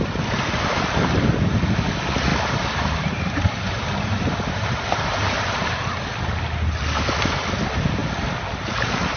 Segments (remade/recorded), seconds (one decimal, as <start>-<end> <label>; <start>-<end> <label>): 0.0-2.3 recorded; 2.3-5.9 remade; 5.9-9.2 recorded